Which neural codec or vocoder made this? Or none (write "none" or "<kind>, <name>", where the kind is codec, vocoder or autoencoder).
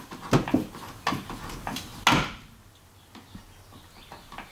none